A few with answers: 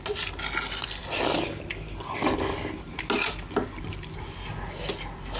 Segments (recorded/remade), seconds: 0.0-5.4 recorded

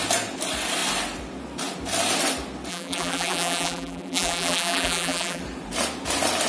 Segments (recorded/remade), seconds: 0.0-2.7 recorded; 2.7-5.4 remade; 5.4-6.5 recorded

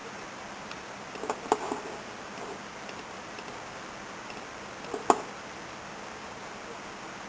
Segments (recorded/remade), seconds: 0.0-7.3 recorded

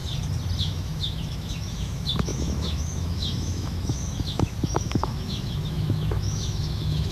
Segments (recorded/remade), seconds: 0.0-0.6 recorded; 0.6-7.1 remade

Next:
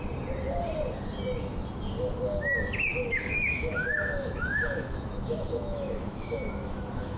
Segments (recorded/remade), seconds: 0.0-2.9 recorded; 2.9-7.2 remade